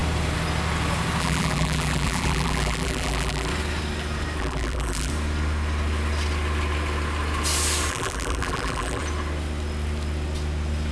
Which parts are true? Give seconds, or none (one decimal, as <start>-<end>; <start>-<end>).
0.0-1.2; 3.5-4.4; 5.1-7.9; 9.0-10.9